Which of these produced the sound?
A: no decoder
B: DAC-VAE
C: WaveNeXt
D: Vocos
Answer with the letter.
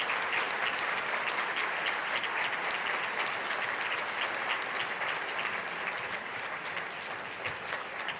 A